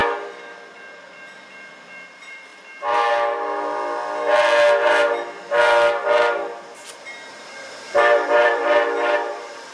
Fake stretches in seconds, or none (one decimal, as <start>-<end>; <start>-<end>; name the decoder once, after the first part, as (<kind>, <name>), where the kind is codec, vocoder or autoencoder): 2.1-2.5 (vocoder, BigVGAN v2); 7.3-9.7